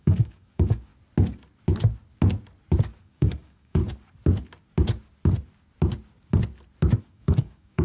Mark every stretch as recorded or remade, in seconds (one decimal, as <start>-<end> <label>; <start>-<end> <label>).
0.0-0.9 remade; 0.9-3.0 recorded; 3.0-3.8 remade; 3.8-7.0 recorded; 7.0-7.8 remade